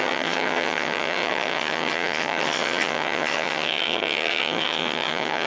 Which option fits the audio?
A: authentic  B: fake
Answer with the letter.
B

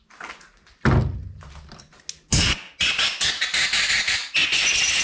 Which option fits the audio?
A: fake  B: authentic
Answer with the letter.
B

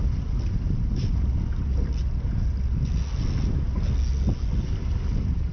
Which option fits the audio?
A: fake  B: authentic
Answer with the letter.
B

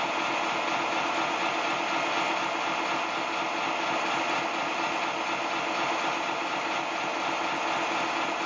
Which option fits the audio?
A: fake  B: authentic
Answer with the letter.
B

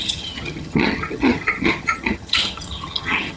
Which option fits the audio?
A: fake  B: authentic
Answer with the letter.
A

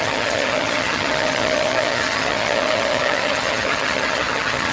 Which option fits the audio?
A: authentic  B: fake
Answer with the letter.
B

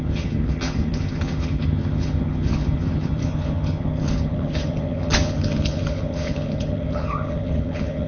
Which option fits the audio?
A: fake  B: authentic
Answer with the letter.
A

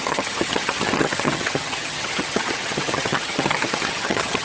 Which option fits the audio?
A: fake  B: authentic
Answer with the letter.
A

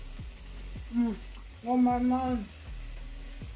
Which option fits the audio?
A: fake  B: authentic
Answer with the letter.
B